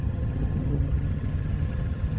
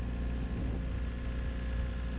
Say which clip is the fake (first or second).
first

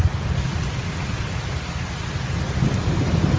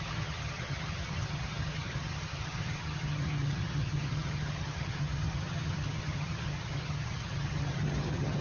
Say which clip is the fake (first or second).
second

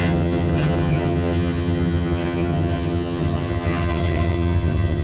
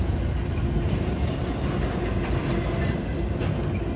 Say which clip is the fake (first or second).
first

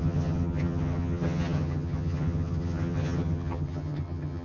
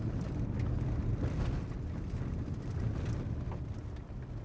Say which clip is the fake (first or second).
first